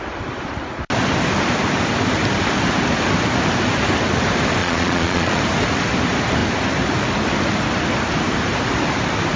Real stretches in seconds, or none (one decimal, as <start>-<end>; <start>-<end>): 0.0-4.6; 5.4-9.4